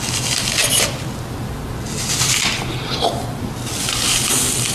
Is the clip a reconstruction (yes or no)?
no